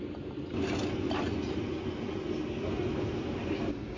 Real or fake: real